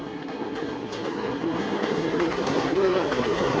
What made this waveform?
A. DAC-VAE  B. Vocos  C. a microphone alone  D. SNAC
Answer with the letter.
D